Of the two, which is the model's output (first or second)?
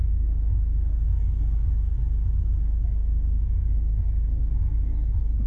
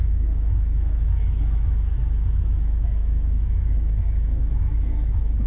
second